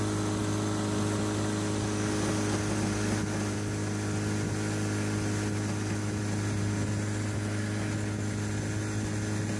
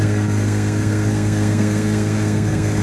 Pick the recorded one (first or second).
first